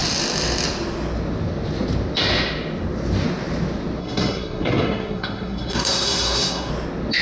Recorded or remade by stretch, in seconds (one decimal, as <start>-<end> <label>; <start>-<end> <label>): 0.0-4.0 recorded; 4.0-6.7 remade; 6.7-7.2 recorded

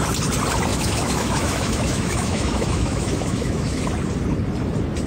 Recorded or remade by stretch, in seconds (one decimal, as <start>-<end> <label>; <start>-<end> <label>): 0.0-0.7 recorded; 0.7-3.8 remade; 3.8-5.1 recorded

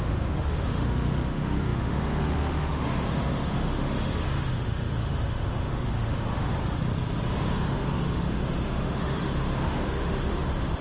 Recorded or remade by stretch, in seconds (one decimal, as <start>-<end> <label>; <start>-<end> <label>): 0.0-6.6 remade; 6.6-7.4 recorded; 7.4-10.8 remade

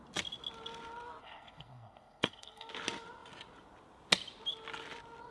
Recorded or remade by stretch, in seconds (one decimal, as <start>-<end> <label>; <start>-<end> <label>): 0.0-1.2 recorded; 1.2-2.7 remade; 2.7-5.3 recorded

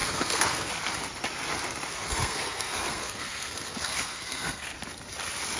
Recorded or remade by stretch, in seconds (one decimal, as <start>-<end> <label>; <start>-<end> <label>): 0.0-0.7 remade; 0.7-1.9 recorded; 1.9-4.7 remade; 4.7-5.6 recorded

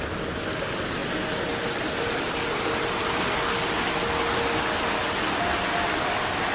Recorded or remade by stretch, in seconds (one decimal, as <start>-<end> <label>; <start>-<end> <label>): 0.0-6.5 recorded

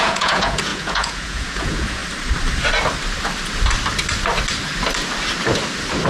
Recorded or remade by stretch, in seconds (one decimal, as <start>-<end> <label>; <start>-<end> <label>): 0.0-2.0 remade; 2.0-6.1 recorded

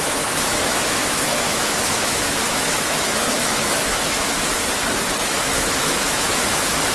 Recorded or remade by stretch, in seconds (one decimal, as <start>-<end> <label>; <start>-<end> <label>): 0.0-4.5 remade; 4.5-5.2 recorded; 5.2-6.9 remade